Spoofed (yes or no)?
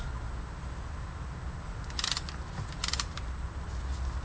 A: no